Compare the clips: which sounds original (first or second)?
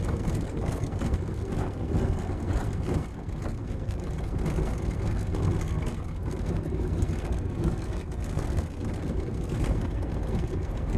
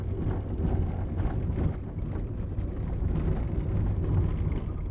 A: second